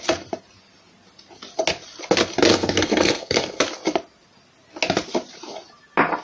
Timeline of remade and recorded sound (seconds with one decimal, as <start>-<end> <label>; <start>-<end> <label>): 0.0-2.5 recorded; 2.5-3.6 remade; 3.6-6.2 recorded